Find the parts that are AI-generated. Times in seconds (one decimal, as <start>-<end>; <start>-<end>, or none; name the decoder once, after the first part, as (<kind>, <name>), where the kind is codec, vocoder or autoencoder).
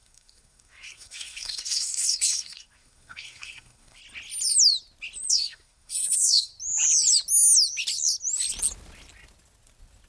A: 0.0-4.0 (codec, SNAC); 5.3-6.5